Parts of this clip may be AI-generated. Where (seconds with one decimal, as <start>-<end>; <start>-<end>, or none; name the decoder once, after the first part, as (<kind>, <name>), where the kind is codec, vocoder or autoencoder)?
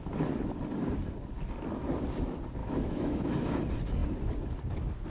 2.6-3.6 (autoencoder, DAC-VAE)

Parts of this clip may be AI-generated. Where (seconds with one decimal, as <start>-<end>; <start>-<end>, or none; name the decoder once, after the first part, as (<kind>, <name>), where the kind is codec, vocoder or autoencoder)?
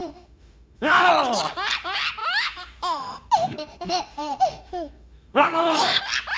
0.0-1.1 (autoencoder, DAC-VAE); 2.2-6.0